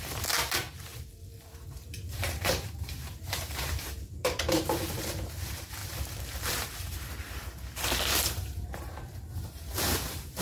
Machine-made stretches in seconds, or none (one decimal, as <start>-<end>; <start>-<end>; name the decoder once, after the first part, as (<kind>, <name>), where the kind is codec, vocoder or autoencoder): 0.0-10.4 (vocoder, BigVGAN v2)

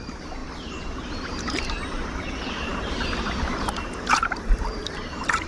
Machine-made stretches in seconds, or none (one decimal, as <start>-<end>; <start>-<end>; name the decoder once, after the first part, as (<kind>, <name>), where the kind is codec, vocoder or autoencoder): 0.0-5.5 (vocoder, BigVGAN v2)

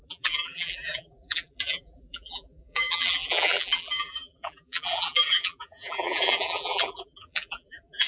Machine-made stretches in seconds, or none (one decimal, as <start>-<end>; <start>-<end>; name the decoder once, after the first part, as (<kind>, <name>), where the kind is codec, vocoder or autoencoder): 0.0-8.1 (vocoder, BigVGAN v2)

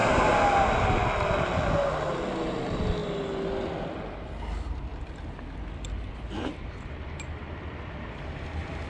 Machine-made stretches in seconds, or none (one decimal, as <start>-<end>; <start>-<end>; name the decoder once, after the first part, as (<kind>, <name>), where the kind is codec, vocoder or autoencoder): none

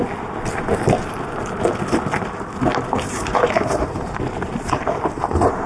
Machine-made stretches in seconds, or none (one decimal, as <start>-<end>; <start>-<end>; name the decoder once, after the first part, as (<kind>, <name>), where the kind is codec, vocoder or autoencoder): 2.7-5.0 (vocoder, BigVGAN v2)

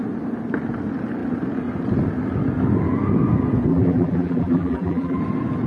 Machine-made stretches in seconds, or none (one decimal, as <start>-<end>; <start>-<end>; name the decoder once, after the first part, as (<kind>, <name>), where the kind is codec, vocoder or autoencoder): 3.7-5.2 (vocoder, BigVGAN v2)